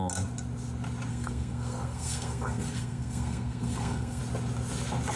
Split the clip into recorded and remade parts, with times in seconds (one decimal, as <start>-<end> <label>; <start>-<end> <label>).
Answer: 0.0-1.1 recorded; 1.1-4.2 remade; 4.2-5.2 recorded